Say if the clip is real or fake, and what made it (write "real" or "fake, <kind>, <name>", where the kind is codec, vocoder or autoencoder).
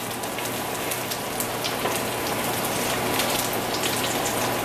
real